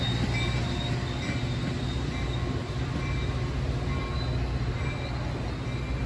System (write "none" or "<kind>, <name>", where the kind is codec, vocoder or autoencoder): none